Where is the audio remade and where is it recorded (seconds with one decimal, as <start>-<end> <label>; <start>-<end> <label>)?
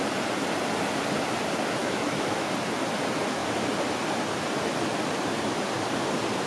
0.0-1.8 recorded; 1.8-2.5 remade; 2.5-6.5 recorded